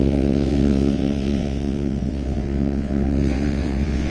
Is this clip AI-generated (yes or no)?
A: yes